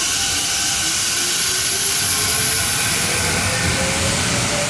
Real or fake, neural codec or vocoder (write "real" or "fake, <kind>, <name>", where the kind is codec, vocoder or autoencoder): real